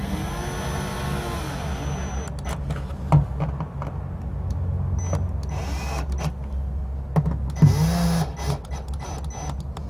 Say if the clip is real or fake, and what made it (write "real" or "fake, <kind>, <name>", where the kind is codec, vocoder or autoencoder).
real